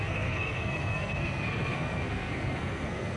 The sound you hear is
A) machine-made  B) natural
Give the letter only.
A